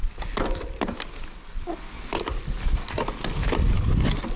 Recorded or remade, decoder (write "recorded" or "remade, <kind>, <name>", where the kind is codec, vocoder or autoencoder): recorded